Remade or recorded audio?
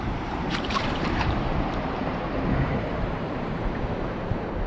remade